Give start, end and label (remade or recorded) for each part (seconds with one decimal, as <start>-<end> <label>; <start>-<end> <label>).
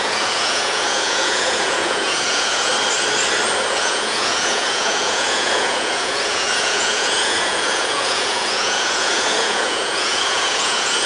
0.0-2.7 remade; 2.7-3.7 recorded; 3.7-11.1 remade